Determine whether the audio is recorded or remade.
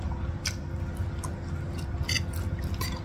recorded